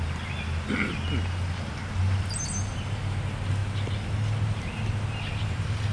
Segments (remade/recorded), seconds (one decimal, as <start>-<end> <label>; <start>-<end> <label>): 0.0-5.9 recorded

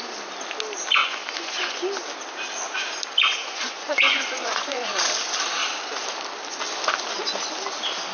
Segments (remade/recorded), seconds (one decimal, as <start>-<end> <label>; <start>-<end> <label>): 0.0-1.0 recorded; 1.0-1.8 remade; 1.8-3.3 recorded; 3.3-5.1 remade; 5.1-8.1 recorded

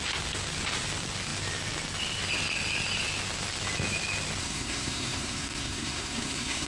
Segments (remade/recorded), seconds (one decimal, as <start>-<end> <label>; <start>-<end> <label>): 0.0-4.4 recorded; 4.4-6.7 remade

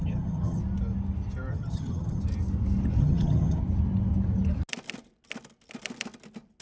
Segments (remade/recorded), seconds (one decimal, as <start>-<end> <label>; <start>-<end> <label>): 0.0-0.6 remade; 0.6-1.5 recorded; 1.5-2.2 remade; 2.2-3.0 recorded; 3.0-3.6 remade; 3.6-6.6 recorded

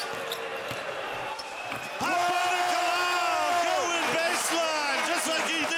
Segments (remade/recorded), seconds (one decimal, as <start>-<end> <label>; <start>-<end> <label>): 0.0-0.5 recorded; 0.5-1.7 remade; 1.7-5.8 recorded

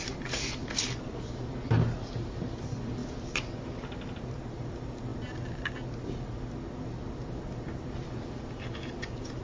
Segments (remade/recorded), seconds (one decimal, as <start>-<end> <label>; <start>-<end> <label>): 0.0-9.4 recorded